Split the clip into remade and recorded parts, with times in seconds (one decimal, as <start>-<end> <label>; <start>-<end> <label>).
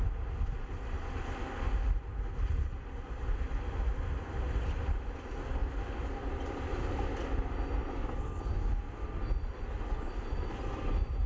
0.0-11.3 recorded